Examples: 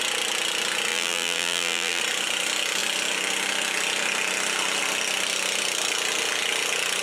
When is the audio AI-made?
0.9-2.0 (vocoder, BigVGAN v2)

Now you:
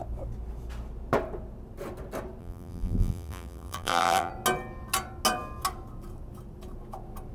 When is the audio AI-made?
2.4-4.3 (vocoder, BigVGAN v2)

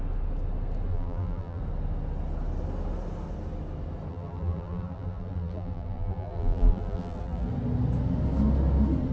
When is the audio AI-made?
0.9-1.6 (vocoder, BigVGAN v2); 4.1-7.5